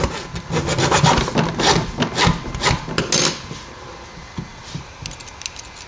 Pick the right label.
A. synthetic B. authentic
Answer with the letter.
B